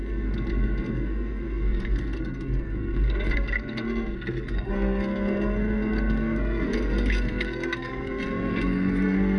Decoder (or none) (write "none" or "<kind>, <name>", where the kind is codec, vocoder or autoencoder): codec, SNAC